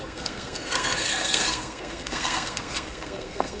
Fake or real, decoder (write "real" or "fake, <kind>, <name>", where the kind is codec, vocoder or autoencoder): fake, codec, SNAC